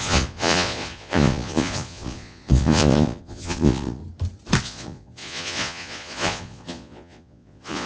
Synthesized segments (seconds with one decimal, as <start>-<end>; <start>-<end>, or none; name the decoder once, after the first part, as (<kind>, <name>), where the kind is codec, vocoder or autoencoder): 0.0-4.0 (vocoder, Vocos); 4.6-7.9